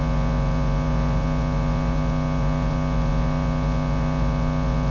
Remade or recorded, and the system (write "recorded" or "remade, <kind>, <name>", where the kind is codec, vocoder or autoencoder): remade, vocoder, Vocos